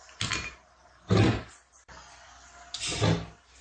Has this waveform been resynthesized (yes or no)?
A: no